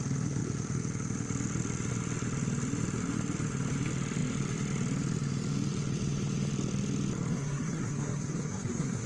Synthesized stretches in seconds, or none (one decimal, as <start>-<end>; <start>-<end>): 7.3-9.1